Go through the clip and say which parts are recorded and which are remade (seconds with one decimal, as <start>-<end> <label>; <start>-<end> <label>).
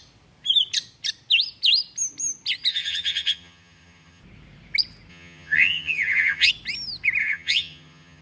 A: 0.0-2.7 recorded; 2.7-4.2 remade; 4.2-5.1 recorded; 5.1-6.5 remade; 6.5-7.2 recorded; 7.2-8.2 remade